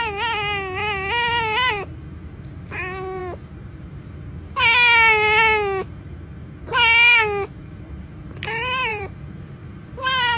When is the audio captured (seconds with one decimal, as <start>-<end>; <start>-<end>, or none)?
0.0-8.9